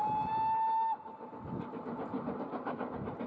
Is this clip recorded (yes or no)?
yes